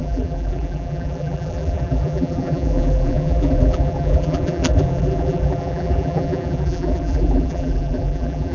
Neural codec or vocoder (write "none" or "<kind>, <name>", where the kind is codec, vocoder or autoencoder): vocoder, BigVGAN v2